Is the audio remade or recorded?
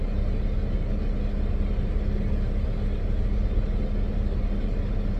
recorded